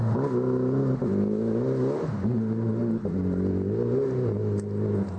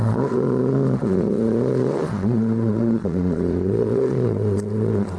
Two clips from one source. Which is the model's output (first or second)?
second